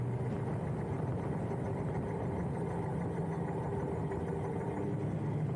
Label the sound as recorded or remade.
recorded